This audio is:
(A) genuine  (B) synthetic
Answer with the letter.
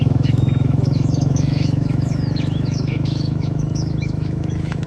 B